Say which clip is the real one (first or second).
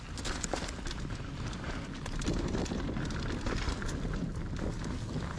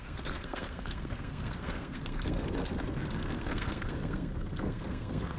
first